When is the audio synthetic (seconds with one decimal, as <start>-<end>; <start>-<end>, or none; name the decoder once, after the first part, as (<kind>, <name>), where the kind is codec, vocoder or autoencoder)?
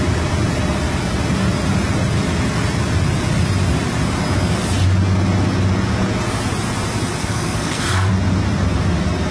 7.2-8.1 (codec, SNAC)